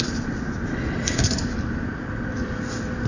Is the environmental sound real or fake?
real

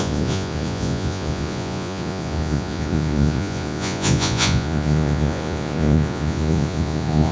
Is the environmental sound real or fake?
fake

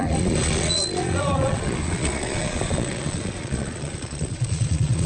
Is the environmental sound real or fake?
fake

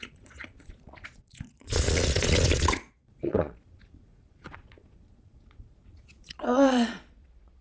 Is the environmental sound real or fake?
fake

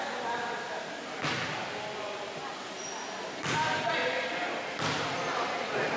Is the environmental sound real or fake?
real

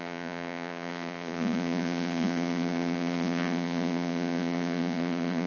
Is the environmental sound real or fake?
fake